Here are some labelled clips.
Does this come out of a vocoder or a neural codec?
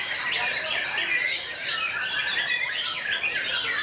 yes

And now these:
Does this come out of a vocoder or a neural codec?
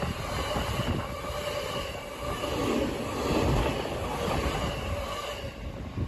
no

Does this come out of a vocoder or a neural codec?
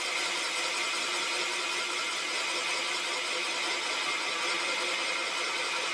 no